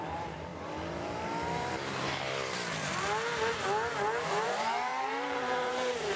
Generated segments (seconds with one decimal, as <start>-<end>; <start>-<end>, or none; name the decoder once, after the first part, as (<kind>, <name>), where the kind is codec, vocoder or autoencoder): 0.0-0.5 (vocoder, BigVGAN v2); 4.2-6.2